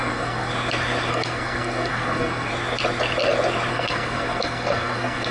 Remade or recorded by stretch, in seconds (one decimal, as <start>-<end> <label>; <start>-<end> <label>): 0.0-0.5 remade; 0.5-1.1 recorded; 1.1-2.5 remade; 2.5-3.7 recorded; 3.7-5.3 remade